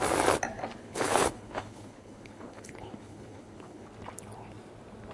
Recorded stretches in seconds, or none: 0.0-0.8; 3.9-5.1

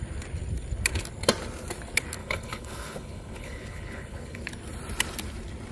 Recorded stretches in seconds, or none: 0.0-2.2; 4.4-5.7

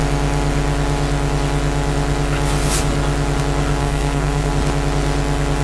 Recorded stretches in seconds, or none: 0.0-3.8; 4.5-5.6

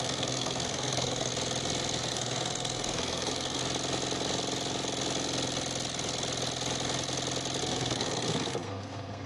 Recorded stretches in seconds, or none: 1.3-2.1; 3.6-7.6

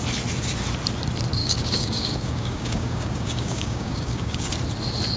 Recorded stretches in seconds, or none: 0.0-1.4; 4.5-5.2

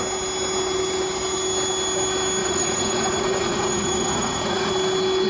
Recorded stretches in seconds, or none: 0.0-2.4; 4.7-5.3

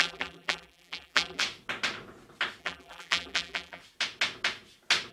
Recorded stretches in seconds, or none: 1.4-2.6; 3.8-5.1